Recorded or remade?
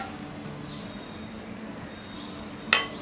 recorded